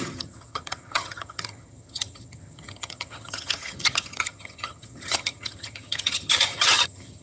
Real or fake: fake